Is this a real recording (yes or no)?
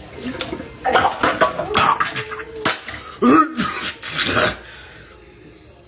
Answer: yes